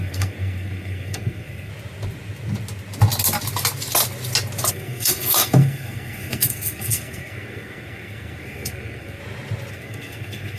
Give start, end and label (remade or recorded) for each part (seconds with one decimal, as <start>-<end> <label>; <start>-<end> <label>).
0.0-1.7 remade; 1.7-4.7 recorded; 4.7-9.2 remade; 9.2-9.7 recorded; 9.7-10.6 remade

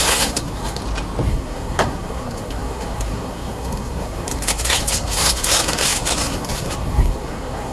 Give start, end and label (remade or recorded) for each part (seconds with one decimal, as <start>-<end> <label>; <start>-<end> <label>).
0.0-0.8 remade; 0.8-1.3 recorded; 1.3-7.7 remade

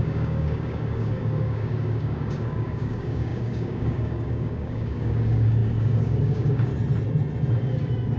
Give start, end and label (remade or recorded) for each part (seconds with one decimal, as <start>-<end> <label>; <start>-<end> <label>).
0.0-6.7 remade; 6.7-8.2 recorded

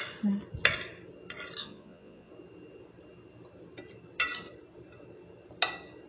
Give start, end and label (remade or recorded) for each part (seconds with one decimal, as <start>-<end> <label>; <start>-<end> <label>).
0.0-1.6 recorded; 1.6-2.3 remade; 2.3-6.1 recorded

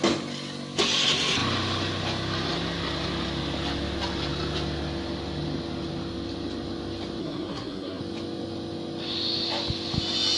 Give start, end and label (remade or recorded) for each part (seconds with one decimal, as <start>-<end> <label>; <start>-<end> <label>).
0.0-7.2 recorded; 7.2-8.0 remade; 8.0-10.4 recorded